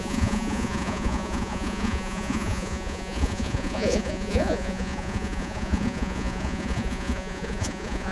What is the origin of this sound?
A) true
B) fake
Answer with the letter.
B